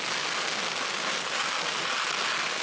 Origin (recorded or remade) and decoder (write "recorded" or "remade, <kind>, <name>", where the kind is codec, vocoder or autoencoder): recorded